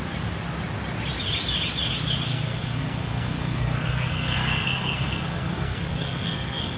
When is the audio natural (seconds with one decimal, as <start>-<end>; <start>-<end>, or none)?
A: 0.0-2.3